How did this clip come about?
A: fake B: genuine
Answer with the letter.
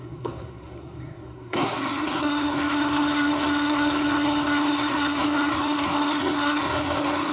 A